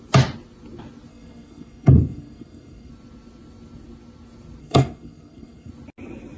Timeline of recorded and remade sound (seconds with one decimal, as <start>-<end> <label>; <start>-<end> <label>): 0.0-1.1 recorded; 1.1-2.9 remade; 2.9-4.6 recorded; 4.6-5.7 remade; 5.7-6.4 recorded